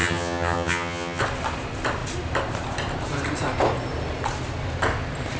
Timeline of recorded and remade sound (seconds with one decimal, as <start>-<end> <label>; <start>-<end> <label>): 0.0-1.2 remade; 1.2-5.4 recorded